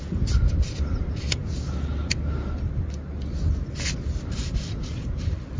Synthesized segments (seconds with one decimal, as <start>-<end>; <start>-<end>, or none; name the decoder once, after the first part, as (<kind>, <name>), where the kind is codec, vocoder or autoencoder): none